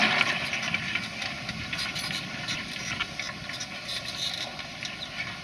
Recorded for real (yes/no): yes